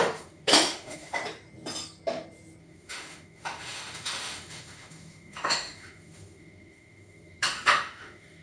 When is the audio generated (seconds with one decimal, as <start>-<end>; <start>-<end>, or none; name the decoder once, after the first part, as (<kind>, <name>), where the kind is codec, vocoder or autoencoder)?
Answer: 0.0-1.2 (autoencoder, DAC-VAE); 2.6-8.4